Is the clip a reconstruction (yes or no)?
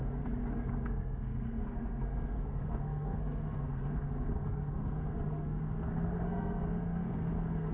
yes